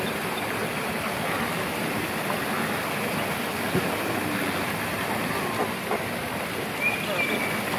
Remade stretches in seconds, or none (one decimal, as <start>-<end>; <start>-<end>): none